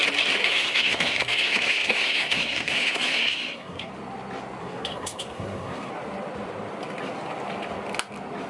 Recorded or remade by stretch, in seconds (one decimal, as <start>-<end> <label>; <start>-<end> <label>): 0.0-0.4 recorded; 0.4-3.9 remade; 3.9-4.6 recorded; 4.6-5.9 remade; 5.9-8.5 recorded